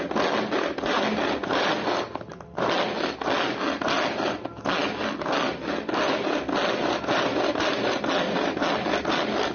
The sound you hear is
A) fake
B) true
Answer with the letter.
B